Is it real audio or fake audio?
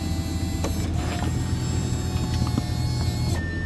real